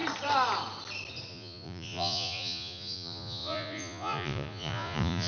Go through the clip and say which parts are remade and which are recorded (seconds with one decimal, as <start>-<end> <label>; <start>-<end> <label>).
0.0-1.3 recorded; 1.3-5.3 remade